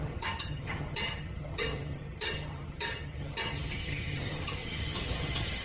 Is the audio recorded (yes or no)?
no